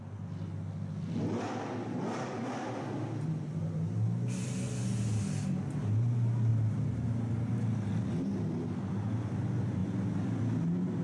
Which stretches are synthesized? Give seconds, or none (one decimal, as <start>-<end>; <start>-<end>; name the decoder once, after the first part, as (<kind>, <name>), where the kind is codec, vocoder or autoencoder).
none